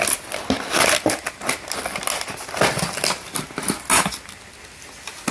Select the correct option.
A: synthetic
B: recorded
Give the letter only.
B